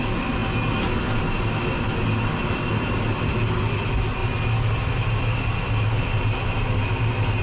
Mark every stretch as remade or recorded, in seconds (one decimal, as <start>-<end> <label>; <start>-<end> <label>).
0.0-7.4 recorded